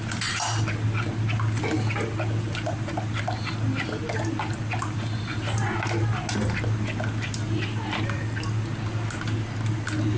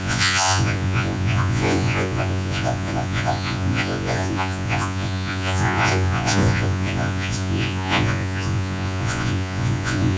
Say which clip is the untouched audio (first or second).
first